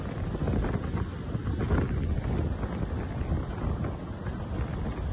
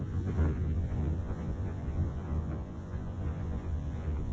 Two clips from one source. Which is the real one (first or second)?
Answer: first